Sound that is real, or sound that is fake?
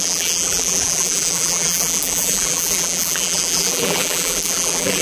fake